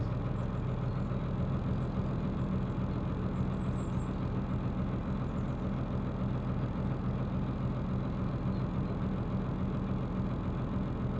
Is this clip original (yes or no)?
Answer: yes